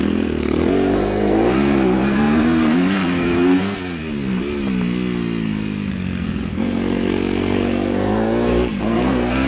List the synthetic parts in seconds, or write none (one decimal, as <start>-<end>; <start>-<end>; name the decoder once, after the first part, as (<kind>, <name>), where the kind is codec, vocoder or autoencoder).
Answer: 0.0-4.0 (codec, SNAC); 5.9-9.5